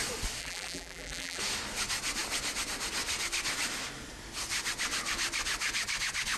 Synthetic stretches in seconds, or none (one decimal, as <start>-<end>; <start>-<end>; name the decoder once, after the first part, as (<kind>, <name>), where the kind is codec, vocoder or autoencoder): 0.4-1.4 (vocoder, BigVGAN v2)